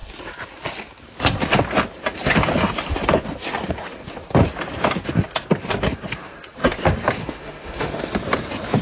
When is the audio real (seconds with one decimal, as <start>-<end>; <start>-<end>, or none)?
0.0-7.2; 8.1-8.8